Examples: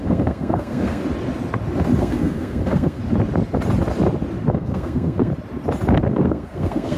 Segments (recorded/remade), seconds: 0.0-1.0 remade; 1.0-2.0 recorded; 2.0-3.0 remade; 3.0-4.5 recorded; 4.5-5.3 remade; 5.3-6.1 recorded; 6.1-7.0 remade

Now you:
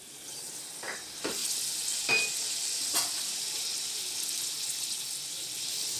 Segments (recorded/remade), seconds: 0.0-6.0 recorded

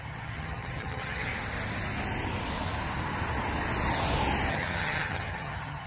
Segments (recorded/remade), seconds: 0.0-1.3 remade; 1.3-4.5 recorded; 4.5-5.9 remade

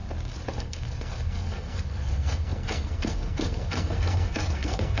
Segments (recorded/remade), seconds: 0.0-0.6 recorded; 0.6-5.0 remade

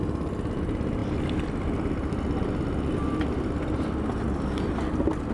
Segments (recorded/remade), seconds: 0.0-5.3 recorded

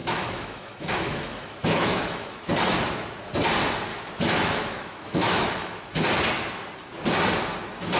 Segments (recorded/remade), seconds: 0.0-2.4 remade; 2.4-3.9 recorded; 3.9-5.9 remade; 5.9-8.0 recorded